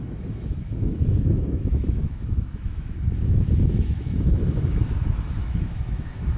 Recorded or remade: remade